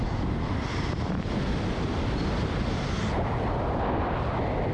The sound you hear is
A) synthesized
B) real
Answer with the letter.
B